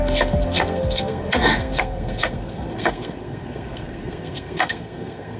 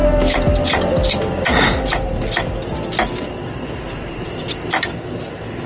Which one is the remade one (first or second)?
first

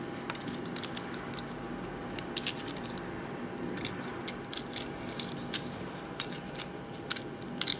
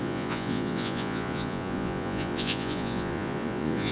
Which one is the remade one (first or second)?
second